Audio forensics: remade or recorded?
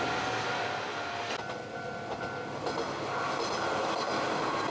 recorded